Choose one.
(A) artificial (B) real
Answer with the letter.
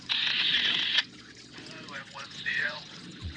A